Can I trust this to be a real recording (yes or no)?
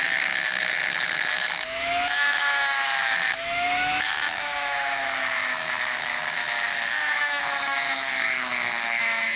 no